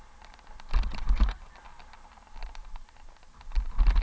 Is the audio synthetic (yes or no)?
no